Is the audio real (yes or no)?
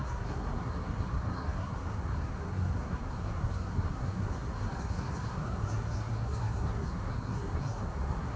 no